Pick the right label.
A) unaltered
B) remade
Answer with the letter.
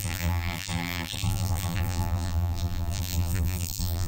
B